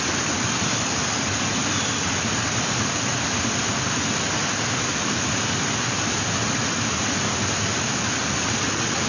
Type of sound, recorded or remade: recorded